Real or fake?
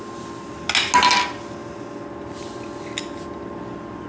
real